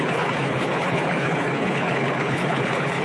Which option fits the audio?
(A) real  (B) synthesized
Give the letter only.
B